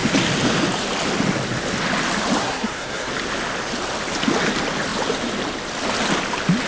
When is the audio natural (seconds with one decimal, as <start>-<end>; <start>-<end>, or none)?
0.0-2.4; 3.1-6.7